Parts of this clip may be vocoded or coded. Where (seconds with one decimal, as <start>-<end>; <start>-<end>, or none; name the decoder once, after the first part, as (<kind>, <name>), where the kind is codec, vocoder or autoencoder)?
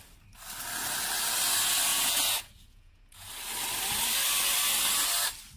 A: 1.9-3.3 (vocoder, Vocos)